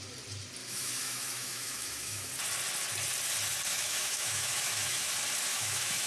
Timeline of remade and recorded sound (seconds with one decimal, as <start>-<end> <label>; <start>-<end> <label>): 0.0-0.6 recorded; 0.6-2.3 remade; 2.3-3.7 recorded; 3.7-5.1 remade; 5.1-5.5 recorded; 5.5-6.1 remade